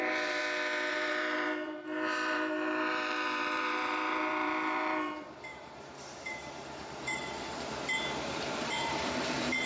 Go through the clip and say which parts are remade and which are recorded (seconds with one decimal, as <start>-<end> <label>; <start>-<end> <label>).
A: 0.0-0.4 remade; 0.4-0.9 recorded; 0.9-9.7 remade